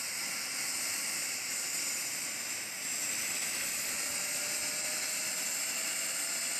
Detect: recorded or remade recorded